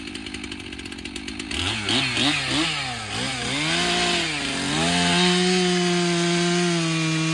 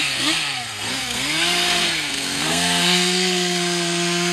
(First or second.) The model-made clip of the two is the second